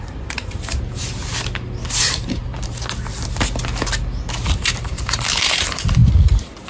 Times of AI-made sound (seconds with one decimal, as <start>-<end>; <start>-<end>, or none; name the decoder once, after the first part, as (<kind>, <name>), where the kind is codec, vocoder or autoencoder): 0.0-1.2 (vocoder, BigVGAN v2); 2.0-2.4; 4.6-6.0